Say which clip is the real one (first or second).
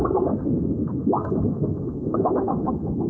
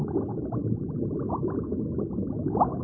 second